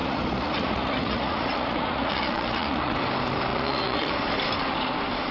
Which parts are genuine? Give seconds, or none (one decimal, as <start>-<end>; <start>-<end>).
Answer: 2.9-3.5; 4.1-5.3